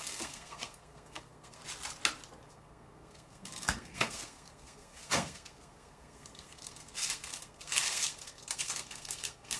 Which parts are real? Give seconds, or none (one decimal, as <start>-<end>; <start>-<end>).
1.6-2.5